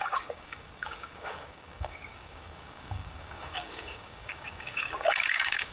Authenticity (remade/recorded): remade